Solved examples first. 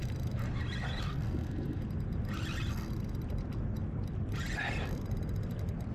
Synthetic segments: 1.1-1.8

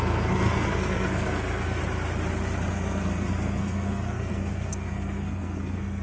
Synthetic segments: 0.0-1.8; 2.7-6.0